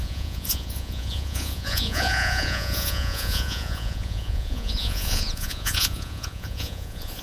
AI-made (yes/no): yes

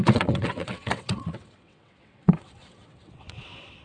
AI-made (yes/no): yes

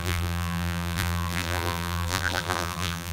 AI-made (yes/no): yes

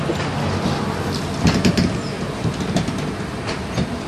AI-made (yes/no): no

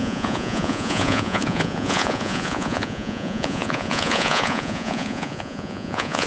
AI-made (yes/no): yes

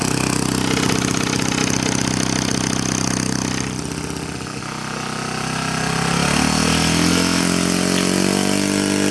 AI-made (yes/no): no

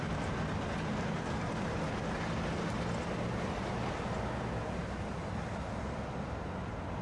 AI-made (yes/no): no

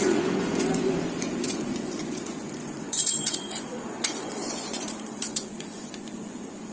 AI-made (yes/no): yes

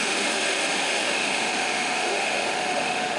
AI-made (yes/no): yes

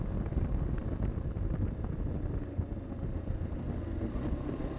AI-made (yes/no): no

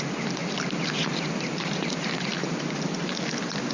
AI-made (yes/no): no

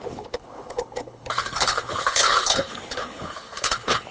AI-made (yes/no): yes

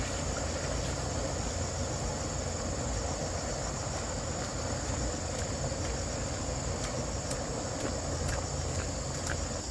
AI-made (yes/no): no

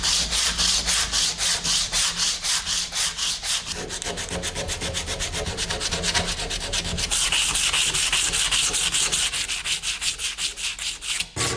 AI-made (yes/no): no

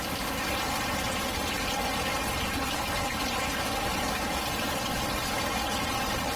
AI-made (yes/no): no